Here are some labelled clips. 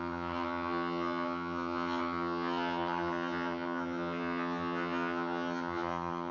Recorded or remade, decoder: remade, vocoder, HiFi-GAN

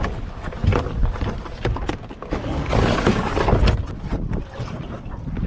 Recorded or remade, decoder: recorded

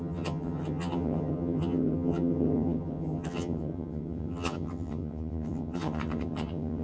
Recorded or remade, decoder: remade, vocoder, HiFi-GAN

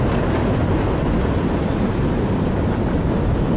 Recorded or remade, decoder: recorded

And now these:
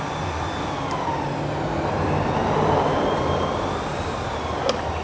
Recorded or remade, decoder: recorded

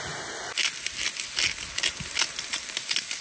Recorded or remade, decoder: recorded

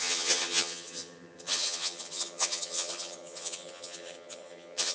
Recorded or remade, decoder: remade, vocoder, HiFi-GAN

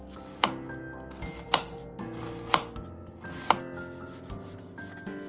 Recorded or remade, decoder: recorded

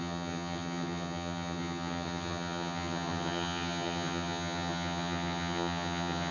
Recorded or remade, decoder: remade, vocoder, HiFi-GAN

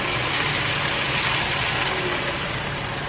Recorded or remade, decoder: recorded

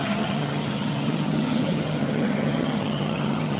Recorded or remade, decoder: remade, vocoder, HiFi-GAN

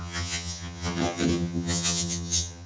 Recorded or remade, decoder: remade, vocoder, HiFi-GAN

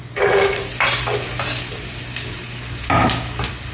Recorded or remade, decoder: recorded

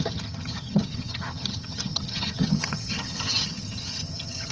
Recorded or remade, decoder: remade, vocoder, HiFi-GAN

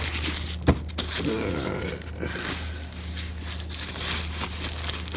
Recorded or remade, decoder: recorded